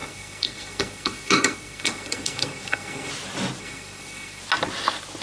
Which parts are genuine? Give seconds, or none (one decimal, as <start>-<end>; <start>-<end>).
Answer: 3.1-3.6; 4.4-5.2

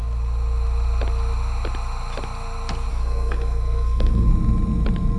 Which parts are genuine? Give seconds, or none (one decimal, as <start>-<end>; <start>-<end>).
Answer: 0.0-2.9; 4.3-5.2